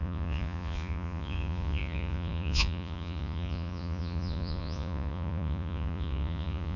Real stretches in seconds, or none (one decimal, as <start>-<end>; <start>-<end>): none